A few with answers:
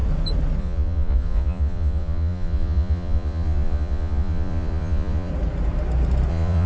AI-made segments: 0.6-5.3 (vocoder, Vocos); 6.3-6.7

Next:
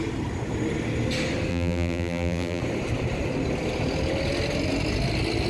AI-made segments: 1.5-2.6 (vocoder, BigVGAN v2)

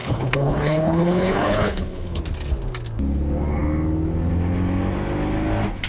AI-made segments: 0.0-2.2 (codec, HILCodec)

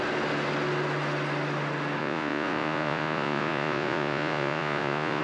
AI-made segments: 2.0-5.2 (vocoder, Vocos)

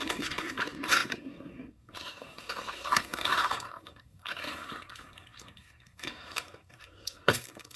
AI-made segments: 0.0-7.8 (codec, SNAC)

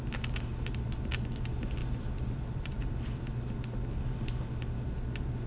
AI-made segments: 1.8-3.2 (vocoder, BigVGAN v2)

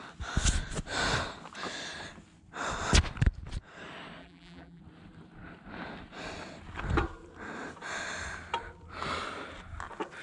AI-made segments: 4.2-4.8 (vocoder, BigVGAN v2)